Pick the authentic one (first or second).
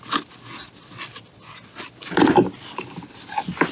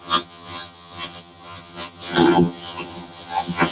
first